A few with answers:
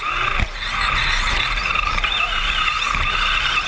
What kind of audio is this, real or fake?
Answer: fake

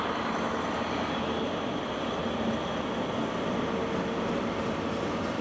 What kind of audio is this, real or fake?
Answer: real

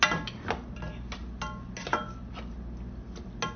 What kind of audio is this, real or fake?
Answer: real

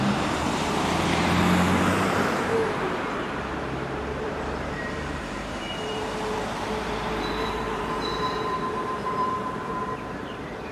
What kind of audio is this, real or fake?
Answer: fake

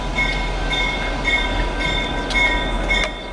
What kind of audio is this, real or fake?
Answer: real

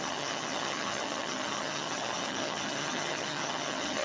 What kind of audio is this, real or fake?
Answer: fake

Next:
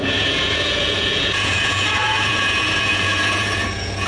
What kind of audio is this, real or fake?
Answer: fake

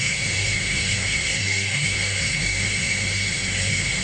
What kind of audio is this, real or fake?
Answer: fake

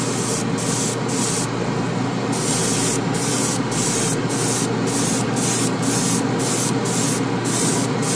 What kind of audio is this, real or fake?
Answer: real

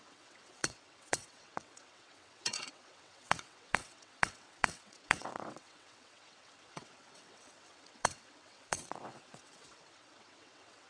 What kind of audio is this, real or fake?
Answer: fake